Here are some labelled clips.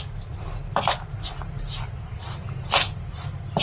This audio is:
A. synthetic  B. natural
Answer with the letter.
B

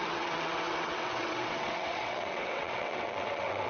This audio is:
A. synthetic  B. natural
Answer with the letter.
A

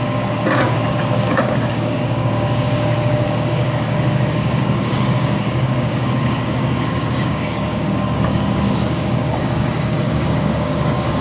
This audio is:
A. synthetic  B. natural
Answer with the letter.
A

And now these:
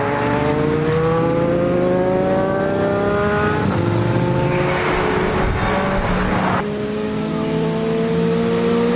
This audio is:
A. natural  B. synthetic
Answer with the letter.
A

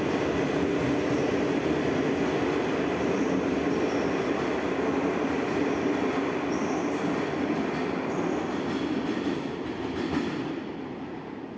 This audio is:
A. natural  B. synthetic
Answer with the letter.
A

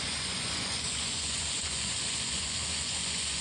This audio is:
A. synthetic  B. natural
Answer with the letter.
A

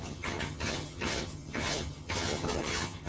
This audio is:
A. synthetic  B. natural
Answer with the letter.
A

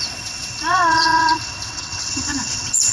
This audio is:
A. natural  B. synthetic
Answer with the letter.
B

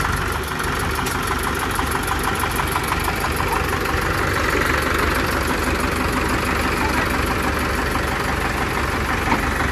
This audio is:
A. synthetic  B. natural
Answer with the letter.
B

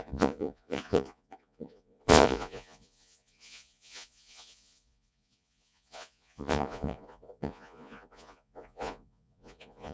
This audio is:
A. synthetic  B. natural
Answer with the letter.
A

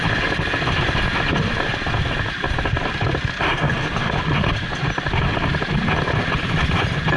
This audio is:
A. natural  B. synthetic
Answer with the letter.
A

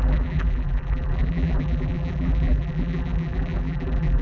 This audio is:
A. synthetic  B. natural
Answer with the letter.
A